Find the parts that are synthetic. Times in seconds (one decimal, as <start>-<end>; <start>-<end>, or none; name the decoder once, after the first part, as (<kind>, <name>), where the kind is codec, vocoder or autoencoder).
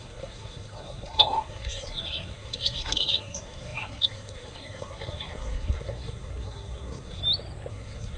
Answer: 0.0-7.2 (codec, SNAC); 7.7-8.2